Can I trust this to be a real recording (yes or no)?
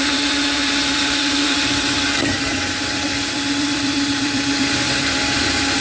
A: no